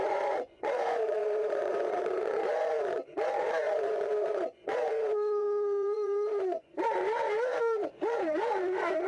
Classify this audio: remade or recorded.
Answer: remade